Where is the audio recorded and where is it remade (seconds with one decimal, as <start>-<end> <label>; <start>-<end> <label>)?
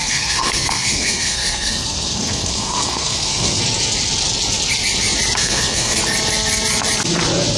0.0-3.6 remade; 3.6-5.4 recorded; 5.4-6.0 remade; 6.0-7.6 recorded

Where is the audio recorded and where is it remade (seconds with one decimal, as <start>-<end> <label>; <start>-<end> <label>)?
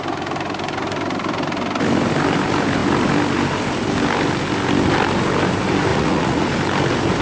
0.0-5.9 recorded; 5.9-6.5 remade; 6.5-7.2 recorded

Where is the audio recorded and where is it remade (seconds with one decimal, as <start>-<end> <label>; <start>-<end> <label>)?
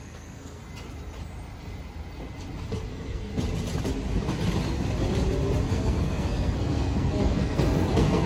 0.0-0.6 remade; 0.6-2.9 recorded; 2.9-3.3 remade; 3.3-5.7 recorded; 5.7-8.3 remade